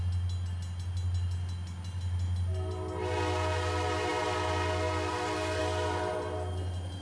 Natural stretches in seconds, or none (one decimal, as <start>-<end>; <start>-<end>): 0.0-7.0